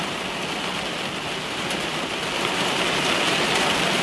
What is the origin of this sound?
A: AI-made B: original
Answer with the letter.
B